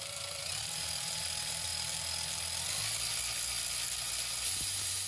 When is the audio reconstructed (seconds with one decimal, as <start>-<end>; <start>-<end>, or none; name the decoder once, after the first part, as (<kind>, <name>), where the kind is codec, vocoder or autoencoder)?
0.0-1.7 (vocoder, BigVGAN v2); 4.6-5.1